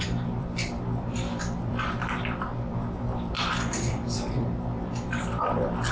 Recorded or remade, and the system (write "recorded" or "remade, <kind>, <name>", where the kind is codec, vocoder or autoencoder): remade, vocoder, BigVGAN v2